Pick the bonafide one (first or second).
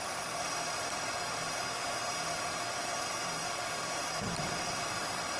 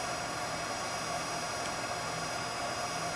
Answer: second